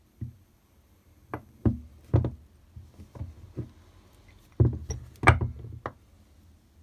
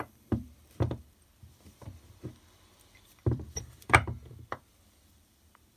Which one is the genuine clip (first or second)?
first